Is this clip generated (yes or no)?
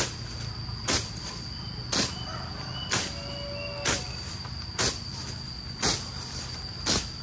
no